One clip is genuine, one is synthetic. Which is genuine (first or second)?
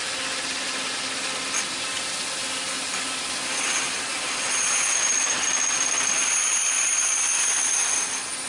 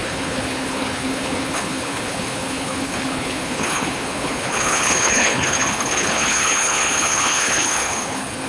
first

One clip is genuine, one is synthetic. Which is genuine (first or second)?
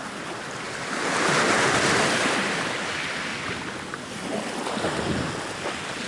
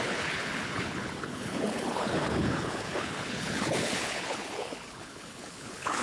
first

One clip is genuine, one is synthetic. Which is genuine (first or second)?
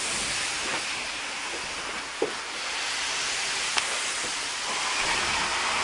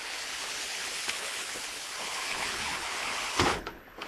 first